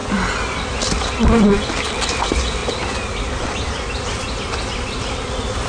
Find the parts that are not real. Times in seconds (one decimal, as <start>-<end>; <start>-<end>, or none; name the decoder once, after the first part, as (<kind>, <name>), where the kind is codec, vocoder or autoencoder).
none